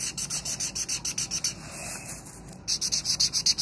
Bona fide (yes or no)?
yes